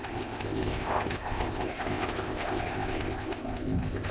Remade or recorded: remade